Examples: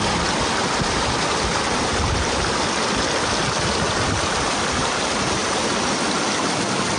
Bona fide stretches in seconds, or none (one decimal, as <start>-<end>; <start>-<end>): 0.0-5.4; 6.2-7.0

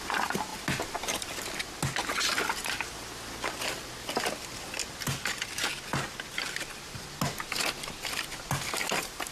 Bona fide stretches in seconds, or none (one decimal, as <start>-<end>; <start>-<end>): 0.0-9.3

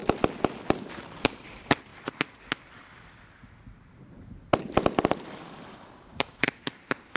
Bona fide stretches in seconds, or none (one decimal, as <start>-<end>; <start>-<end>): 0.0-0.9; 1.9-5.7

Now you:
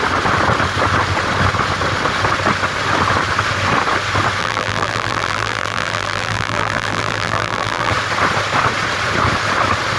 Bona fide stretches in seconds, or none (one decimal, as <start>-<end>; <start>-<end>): 0.0-4.4; 7.9-10.0